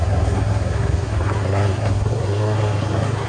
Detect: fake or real fake